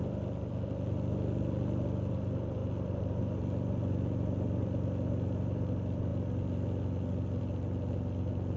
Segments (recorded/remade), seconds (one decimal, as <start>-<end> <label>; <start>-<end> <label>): 0.0-8.6 recorded